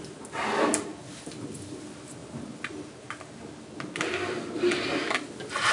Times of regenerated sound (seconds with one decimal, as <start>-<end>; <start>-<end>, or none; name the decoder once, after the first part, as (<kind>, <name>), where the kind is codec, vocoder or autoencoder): none